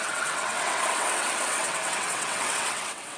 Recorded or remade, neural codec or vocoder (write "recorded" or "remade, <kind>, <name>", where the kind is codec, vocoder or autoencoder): remade, vocoder, WaveNeXt